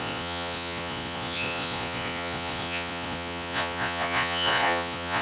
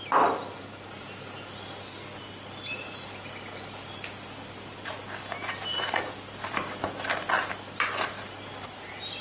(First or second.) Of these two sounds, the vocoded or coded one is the first